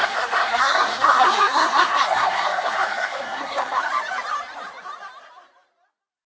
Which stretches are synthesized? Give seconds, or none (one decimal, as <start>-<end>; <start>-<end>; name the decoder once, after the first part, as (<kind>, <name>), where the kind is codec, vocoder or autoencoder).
0.0-3.8 (codec, SNAC)